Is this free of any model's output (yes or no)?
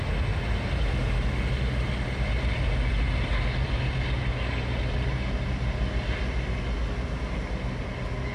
yes